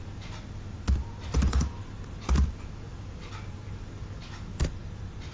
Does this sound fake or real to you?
real